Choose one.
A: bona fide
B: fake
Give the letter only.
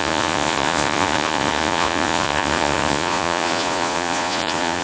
B